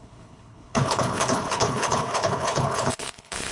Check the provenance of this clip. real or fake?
fake